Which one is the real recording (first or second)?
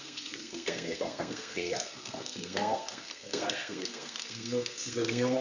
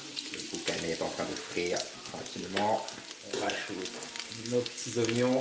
second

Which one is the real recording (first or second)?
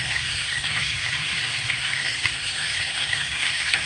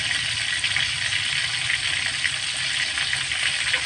second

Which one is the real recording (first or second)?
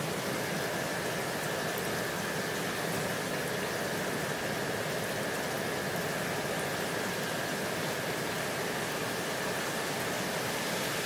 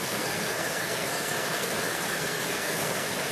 first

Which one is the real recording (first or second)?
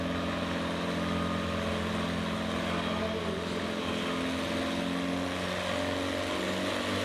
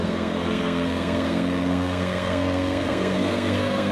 first